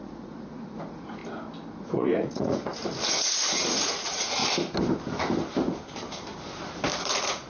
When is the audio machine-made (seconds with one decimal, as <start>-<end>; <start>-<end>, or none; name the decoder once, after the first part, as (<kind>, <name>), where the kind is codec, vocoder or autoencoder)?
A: 0.0-1.2 (vocoder, Vocos); 1.8-2.7; 3.5-4.4; 7.0-7.5